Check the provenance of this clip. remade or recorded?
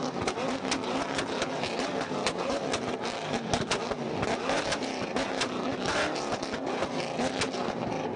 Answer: recorded